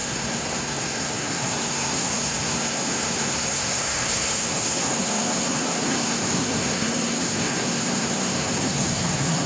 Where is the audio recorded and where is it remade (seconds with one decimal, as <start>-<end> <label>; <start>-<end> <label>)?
0.0-9.5 remade